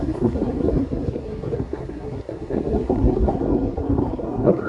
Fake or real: fake